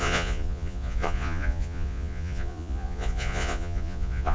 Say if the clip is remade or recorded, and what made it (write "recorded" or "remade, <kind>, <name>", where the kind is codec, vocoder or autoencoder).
remade, vocoder, Vocos